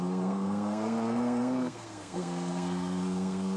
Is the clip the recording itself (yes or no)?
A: no